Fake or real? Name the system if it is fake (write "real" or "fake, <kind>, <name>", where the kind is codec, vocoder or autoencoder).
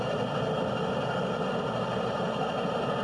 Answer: real